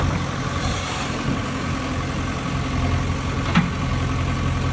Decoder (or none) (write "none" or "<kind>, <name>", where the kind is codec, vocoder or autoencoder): none